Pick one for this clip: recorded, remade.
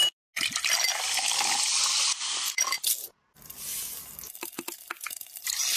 recorded